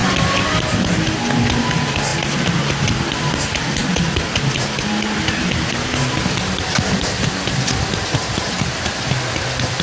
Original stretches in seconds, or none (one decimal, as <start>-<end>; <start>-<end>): 0.0-9.8